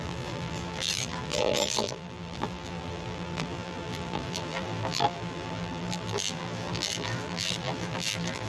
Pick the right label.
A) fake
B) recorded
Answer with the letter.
A